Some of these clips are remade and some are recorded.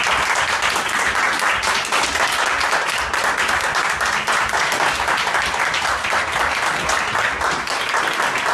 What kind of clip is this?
recorded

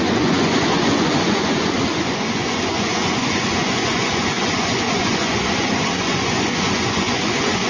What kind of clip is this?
remade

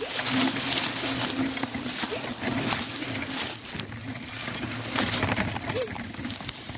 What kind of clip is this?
recorded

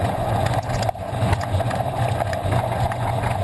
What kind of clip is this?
remade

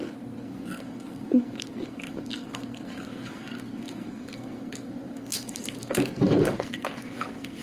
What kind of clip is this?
remade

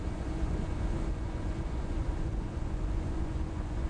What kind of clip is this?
remade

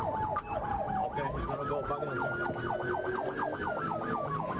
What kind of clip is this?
recorded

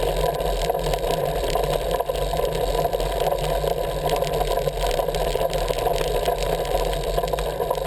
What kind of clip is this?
recorded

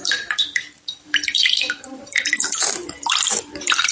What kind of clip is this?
remade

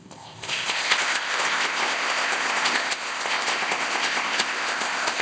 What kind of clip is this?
remade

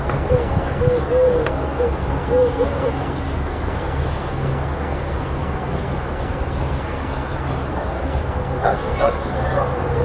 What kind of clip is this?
remade